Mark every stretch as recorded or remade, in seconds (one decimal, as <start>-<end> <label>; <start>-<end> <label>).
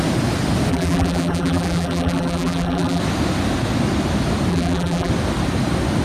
0.0-0.7 recorded; 0.7-3.0 remade; 3.0-4.5 recorded; 4.5-5.1 remade; 5.1-6.0 recorded